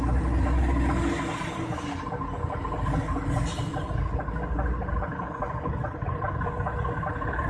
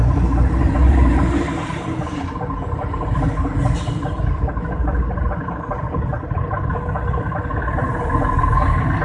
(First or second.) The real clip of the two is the first